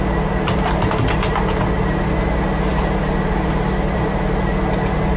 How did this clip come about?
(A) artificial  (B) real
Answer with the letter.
B